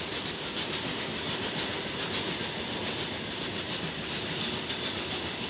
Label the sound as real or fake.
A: real